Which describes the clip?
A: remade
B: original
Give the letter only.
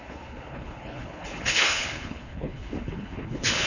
A